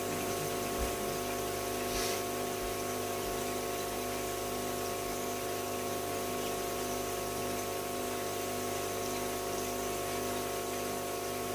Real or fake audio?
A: real